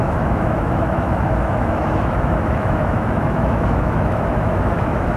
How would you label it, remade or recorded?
remade